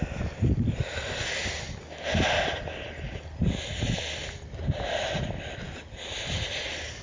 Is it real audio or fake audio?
real